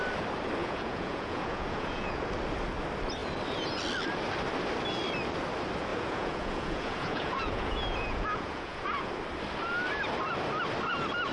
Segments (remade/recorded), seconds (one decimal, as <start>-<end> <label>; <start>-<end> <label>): 0.0-0.6 recorded; 0.6-2.3 remade; 2.3-5.9 recorded; 5.9-9.1 remade; 9.1-11.3 recorded